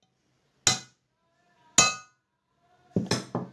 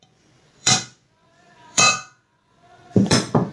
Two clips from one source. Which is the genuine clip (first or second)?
first